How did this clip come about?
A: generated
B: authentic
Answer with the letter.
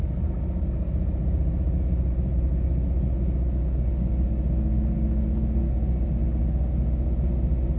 B